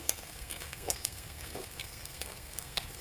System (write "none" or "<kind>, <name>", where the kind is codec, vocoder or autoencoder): codec, SNAC